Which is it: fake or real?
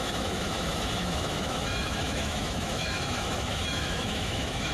fake